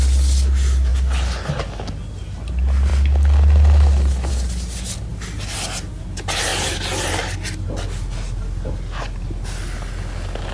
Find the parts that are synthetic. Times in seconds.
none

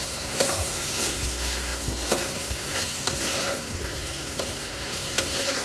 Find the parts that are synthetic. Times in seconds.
0.0-5.6 (codec, SNAC)

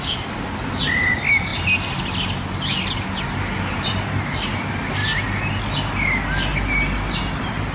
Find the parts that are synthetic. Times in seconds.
none

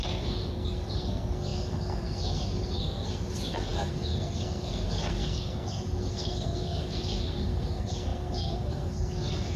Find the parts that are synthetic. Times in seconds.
0.0-9.6 (codec, SNAC)

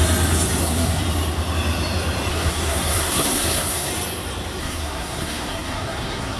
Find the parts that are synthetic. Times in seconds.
0.6-1.0 (codec, SNAC); 2.3-3.9; 4.6-6.4

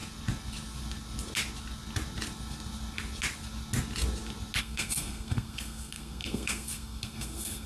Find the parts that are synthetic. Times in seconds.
4.6-7.7 (codec, SNAC)

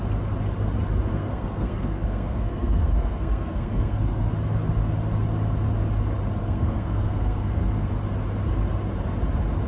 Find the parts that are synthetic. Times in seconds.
1.1-4.3 (codec, SNAC); 6.4-7.9

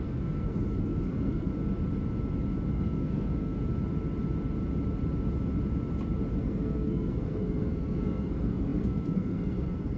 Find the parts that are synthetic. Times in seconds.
0.0-1.5 (codec, SNAC); 2.7-3.6; 6.4-10.0